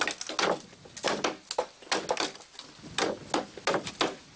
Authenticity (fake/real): real